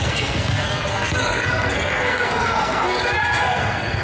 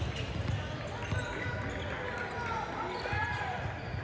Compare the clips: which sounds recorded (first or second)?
second